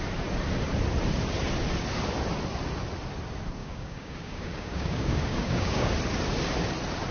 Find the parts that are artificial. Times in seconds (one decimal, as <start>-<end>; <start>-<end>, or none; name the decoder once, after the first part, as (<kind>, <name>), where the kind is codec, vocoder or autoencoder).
3.6-5.9 (codec, DAC)